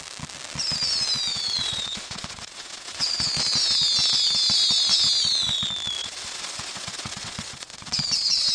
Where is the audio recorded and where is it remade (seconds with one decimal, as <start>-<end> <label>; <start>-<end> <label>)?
0.0-1.3 recorded; 1.3-3.3 remade; 3.3-6.0 recorded; 6.0-8.5 remade